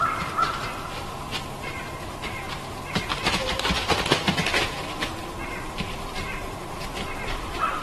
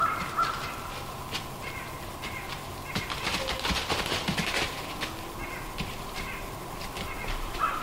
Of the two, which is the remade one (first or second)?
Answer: first